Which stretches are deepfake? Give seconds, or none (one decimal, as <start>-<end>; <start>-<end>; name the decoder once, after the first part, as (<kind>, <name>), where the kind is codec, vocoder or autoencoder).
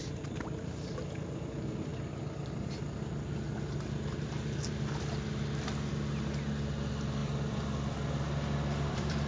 1.9-2.7 (vocoder, BigVGAN v2); 7.2-9.3